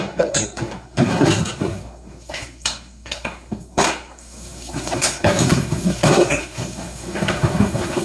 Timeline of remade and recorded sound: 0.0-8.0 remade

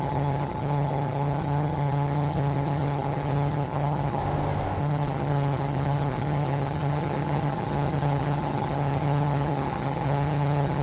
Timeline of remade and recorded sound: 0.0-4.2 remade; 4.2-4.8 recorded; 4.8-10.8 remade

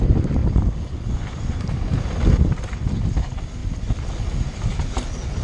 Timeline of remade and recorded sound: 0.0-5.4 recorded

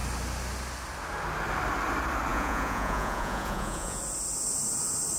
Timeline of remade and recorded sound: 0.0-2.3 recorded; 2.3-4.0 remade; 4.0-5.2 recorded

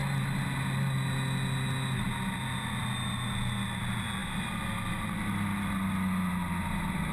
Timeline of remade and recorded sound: 0.0-4.2 recorded; 4.2-4.9 remade; 4.9-7.1 recorded

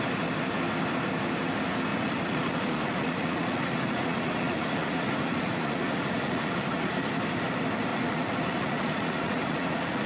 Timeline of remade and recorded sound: 0.0-1.9 recorded; 1.9-6.9 remade; 6.9-7.9 recorded; 7.9-10.1 remade